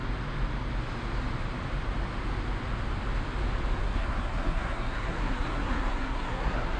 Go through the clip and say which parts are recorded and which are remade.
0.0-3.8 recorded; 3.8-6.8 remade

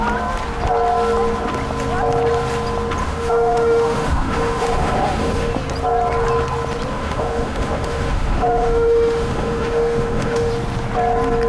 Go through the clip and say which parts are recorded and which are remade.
0.0-3.0 recorded; 3.0-5.5 remade; 5.5-6.9 recorded; 6.9-10.5 remade; 10.5-11.5 recorded

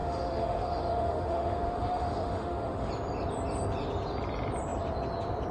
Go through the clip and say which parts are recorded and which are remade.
0.0-2.9 remade; 2.9-5.5 recorded

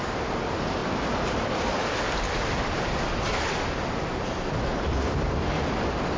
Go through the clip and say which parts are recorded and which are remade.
0.0-6.2 recorded

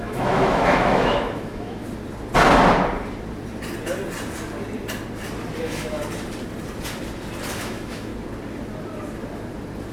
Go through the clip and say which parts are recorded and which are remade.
0.0-1.8 remade; 1.8-5.6 recorded; 5.6-6.0 remade; 6.0-7.6 recorded; 7.6-8.1 remade; 8.1-9.9 recorded